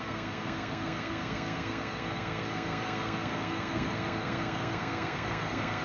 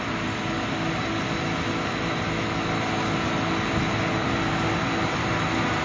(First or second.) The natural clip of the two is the second